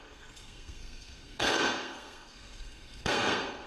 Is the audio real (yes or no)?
no